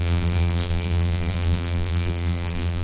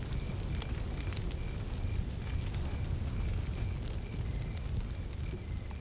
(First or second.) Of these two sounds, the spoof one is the first